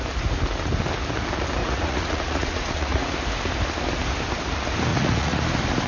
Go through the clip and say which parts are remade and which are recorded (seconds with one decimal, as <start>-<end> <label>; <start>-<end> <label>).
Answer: 0.0-1.6 recorded; 1.6-3.1 remade; 3.1-4.9 recorded; 4.9-5.4 remade; 5.4-5.9 recorded